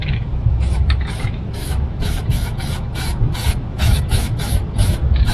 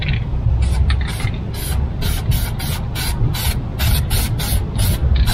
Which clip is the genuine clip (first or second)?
second